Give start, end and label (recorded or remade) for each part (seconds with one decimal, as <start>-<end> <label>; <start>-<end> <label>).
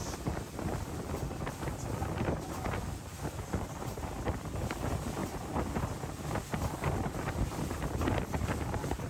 0.0-3.8 remade; 3.8-9.1 recorded